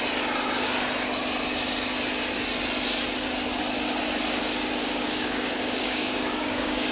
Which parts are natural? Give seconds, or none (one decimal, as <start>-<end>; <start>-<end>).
0.0-4.8

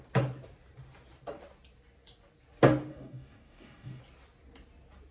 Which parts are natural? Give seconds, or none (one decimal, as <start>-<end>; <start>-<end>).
0.0-2.9; 4.0-5.1

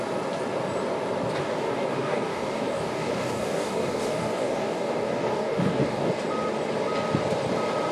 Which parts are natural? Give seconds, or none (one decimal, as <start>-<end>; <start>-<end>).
0.0-1.4; 6.1-7.9